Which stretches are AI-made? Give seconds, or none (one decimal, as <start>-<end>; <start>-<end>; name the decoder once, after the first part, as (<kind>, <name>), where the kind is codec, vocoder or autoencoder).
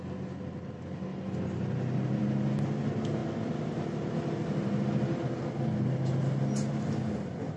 none